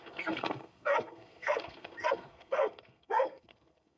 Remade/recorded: remade